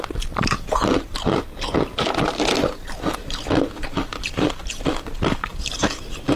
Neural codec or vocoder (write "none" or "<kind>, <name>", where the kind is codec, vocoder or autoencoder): none